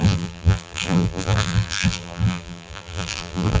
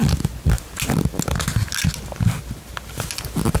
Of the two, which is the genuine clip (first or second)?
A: second